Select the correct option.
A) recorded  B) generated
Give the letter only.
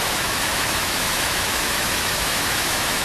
B